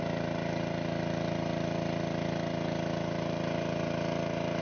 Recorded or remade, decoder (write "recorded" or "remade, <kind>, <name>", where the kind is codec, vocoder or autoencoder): recorded